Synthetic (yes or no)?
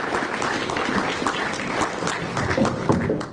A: no